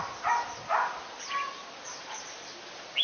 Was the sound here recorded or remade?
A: recorded